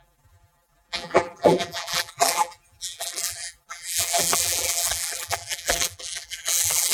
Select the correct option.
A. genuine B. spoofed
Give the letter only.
B